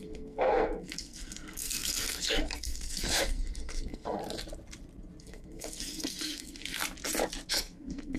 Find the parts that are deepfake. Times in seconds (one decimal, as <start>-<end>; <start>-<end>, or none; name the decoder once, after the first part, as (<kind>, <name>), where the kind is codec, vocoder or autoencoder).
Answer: 0.0-4.2 (codec, SNAC); 5.2-6.8; 7.5-8.2